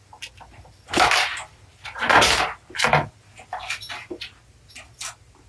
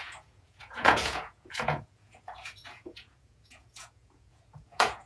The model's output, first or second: second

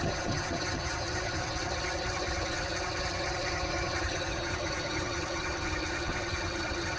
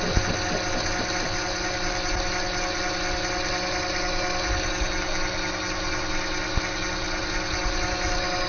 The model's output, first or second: first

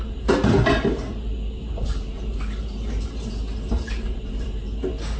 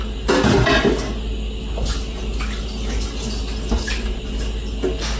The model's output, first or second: first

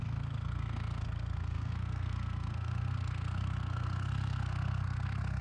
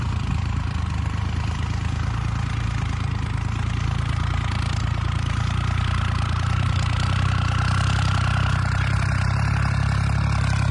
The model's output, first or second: first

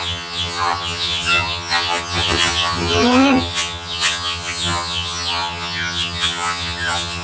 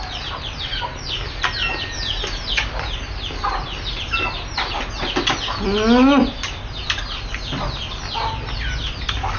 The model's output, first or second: first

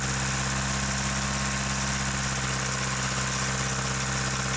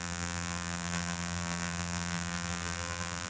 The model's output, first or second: second